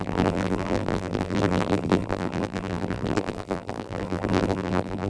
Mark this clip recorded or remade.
remade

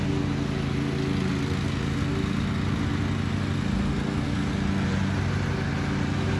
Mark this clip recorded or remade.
recorded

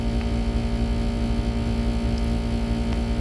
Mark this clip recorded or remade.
recorded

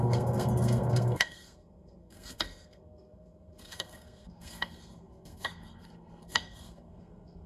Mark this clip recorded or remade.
remade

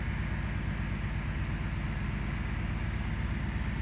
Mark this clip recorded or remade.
recorded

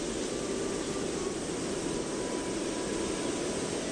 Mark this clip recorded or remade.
recorded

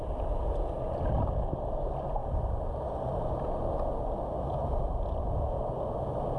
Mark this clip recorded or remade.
recorded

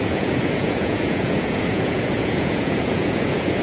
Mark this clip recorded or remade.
remade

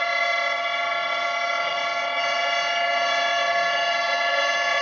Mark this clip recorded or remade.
remade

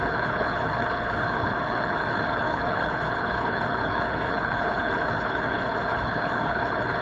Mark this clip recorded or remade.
remade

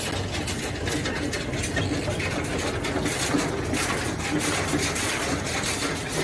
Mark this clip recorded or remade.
recorded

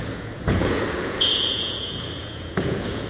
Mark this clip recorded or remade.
remade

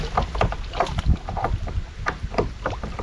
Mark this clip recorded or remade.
recorded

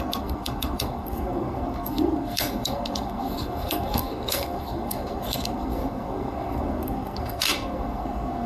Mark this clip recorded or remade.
remade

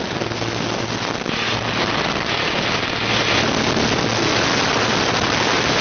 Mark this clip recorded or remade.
recorded